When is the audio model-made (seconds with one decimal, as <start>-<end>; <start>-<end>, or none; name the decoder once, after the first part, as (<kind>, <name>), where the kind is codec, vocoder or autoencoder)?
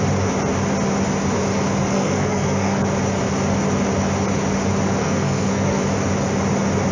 1.9-2.8 (codec, SNAC); 5.0-5.8